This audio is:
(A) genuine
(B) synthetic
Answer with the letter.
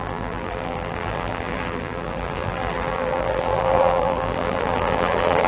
B